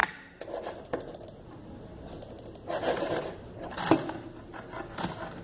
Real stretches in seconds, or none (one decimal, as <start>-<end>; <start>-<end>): 0.9-5.4